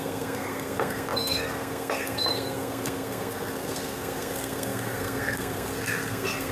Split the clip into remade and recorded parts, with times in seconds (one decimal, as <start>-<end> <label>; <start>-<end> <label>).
0.0-6.5 remade